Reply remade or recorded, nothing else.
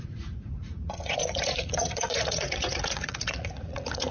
remade